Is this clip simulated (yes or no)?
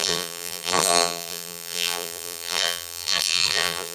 yes